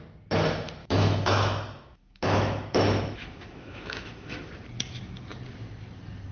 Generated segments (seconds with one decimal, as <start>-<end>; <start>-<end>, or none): 0.8-4.5